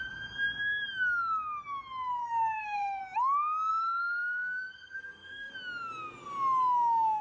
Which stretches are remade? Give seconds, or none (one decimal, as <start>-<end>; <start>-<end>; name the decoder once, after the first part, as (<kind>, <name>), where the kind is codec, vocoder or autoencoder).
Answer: 2.2-3.0 (codec, SNAC); 3.7-5.5